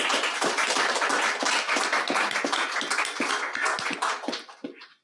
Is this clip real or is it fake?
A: real